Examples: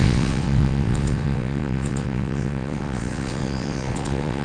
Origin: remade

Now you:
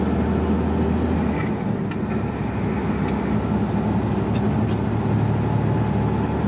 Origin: recorded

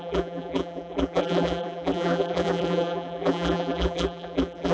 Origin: remade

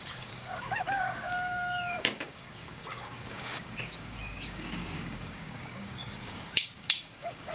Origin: remade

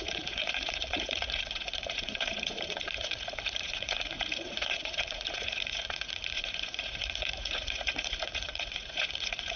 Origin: remade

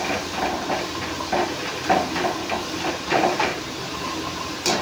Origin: recorded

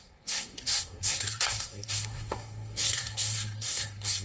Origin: remade